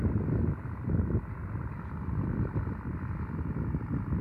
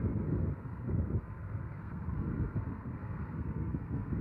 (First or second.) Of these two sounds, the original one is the first